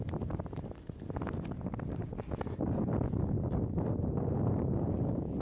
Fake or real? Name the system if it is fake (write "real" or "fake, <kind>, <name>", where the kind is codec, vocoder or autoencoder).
real